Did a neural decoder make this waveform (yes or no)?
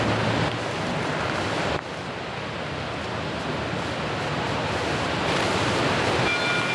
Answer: no